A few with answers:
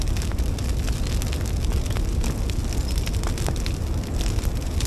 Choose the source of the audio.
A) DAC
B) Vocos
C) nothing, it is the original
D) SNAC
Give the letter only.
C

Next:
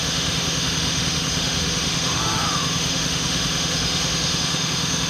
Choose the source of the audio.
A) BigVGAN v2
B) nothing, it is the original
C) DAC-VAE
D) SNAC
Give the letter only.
C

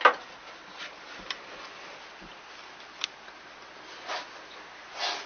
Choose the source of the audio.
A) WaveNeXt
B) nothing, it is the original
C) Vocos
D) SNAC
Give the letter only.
B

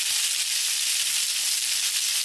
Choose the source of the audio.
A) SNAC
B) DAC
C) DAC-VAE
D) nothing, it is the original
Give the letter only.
D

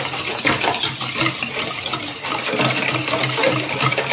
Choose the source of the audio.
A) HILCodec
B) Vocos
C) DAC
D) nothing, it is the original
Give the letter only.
D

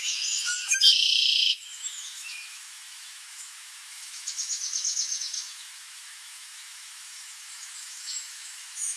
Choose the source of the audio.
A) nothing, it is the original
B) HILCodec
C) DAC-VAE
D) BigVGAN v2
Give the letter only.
C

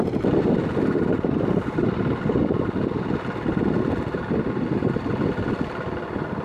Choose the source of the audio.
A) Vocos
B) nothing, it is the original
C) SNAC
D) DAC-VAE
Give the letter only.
B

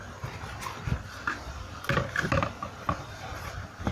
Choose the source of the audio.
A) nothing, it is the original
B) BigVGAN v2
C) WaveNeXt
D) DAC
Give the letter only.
A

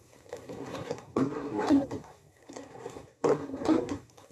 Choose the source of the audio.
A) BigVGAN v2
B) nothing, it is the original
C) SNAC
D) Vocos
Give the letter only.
C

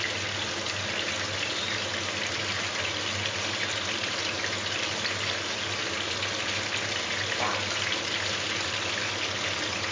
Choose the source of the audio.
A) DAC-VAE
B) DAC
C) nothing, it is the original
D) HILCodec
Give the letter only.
C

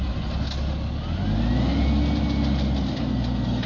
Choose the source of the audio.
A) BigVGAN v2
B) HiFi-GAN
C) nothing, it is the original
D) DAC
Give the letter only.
C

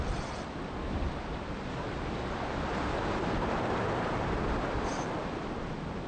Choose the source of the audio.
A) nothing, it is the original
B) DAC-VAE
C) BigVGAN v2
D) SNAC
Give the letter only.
C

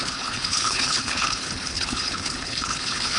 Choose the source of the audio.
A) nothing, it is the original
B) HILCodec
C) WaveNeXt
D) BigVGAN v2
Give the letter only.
B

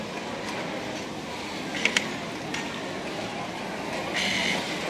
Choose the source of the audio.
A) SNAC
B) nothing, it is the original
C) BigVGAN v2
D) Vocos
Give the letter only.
B